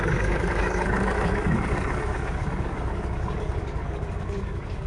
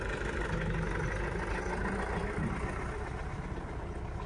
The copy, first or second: first